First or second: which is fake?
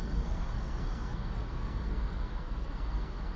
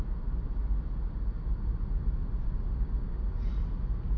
first